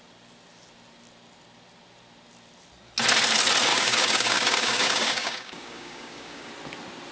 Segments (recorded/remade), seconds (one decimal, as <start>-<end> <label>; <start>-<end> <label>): 0.0-3.7 recorded; 3.7-6.5 remade; 6.5-7.1 recorded